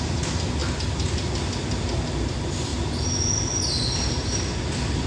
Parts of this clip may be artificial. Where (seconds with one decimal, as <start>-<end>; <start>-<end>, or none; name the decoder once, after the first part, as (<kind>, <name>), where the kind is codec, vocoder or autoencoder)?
none